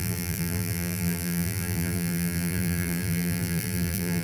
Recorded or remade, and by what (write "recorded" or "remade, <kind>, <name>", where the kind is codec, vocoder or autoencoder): remade, vocoder, BigVGAN v2